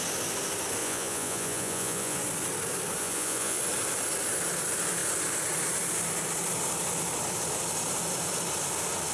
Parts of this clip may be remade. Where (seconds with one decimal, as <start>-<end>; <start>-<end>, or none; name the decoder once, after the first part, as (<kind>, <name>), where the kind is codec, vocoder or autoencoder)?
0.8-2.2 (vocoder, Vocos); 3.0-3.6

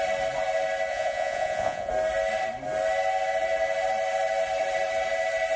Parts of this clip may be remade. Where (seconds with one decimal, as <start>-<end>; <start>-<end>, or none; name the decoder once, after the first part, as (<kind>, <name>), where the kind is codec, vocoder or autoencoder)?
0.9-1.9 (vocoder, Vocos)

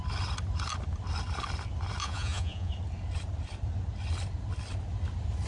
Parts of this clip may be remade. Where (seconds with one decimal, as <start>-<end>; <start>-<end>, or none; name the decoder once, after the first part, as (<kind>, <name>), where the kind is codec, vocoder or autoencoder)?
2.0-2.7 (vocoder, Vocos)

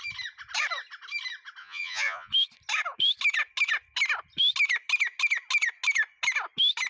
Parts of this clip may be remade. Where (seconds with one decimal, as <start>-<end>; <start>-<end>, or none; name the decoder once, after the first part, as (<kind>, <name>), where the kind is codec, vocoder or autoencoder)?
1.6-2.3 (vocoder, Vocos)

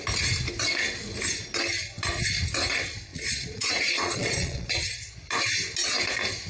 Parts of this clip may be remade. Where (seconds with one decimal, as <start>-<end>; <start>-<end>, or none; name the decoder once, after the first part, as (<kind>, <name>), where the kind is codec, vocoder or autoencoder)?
3.1-4.7 (vocoder, Vocos)

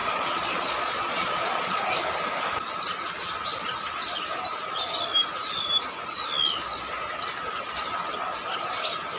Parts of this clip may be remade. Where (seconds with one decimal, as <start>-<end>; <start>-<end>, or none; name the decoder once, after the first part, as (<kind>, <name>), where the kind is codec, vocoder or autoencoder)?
0.0-1.8 (vocoder, Vocos)